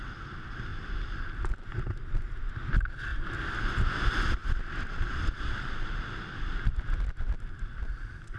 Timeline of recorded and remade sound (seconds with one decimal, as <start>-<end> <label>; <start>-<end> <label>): 0.0-0.7 recorded; 0.7-2.1 remade; 2.1-3.1 recorded; 3.1-3.7 remade; 3.7-8.4 recorded